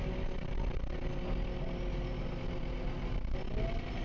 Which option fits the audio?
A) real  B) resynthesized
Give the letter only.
A